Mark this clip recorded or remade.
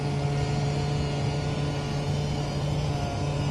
recorded